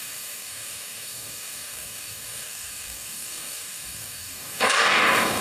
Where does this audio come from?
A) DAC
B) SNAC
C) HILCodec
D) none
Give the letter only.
A